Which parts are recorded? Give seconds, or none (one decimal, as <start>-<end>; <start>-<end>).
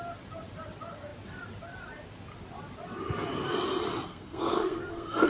0.0-4.1